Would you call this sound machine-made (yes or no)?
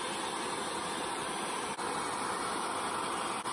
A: no